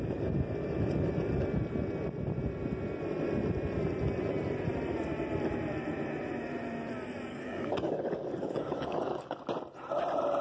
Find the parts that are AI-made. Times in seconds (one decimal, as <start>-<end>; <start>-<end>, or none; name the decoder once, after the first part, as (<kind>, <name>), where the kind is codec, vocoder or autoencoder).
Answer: 7.3-9.4 (codec, DAC)